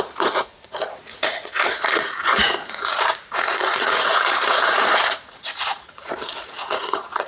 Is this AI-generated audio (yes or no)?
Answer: yes